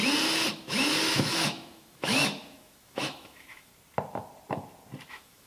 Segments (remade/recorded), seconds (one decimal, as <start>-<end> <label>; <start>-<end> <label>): 0.0-0.5 recorded; 0.5-3.7 remade; 3.7-5.1 recorded; 5.1-5.5 remade